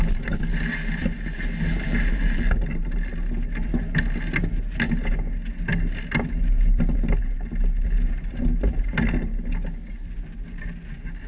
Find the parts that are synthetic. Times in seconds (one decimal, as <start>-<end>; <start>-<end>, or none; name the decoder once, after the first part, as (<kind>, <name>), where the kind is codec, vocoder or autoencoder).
none

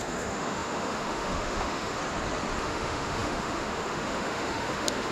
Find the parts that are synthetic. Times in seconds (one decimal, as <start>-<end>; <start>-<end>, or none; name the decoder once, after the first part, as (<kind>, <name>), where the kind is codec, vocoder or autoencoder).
0.0-2.0 (autoencoder, DAC-VAE); 2.6-5.1

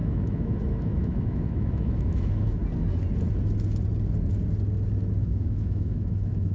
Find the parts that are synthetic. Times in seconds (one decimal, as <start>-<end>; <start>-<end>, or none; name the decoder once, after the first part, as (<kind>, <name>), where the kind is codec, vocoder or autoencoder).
0.0-2.6 (autoencoder, DAC-VAE); 5.2-6.5

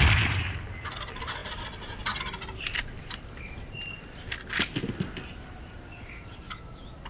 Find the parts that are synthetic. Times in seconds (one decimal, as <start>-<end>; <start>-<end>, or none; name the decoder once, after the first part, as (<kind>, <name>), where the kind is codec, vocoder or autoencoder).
none

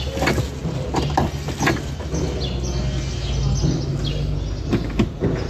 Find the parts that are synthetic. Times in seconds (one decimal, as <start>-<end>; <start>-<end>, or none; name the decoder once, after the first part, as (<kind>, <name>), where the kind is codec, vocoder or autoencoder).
none

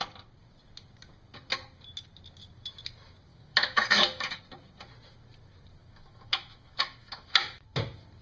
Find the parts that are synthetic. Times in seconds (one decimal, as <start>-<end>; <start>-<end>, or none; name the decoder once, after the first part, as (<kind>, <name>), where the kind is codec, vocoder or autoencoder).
3.3-4.4 (autoencoder, DAC-VAE); 5.8-7.6

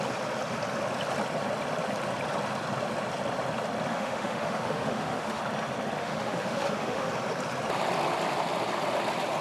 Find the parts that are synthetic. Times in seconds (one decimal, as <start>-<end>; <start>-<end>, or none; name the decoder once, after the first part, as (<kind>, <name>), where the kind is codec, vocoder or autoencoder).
3.9-5.4 (autoencoder, DAC-VAE); 6.0-7.1

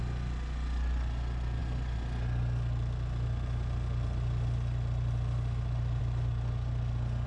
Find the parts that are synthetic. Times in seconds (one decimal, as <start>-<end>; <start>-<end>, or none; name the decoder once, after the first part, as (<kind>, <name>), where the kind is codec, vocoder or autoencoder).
none